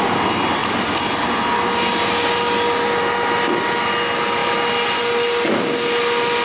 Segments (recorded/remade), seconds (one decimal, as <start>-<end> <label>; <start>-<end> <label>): 0.0-6.4 recorded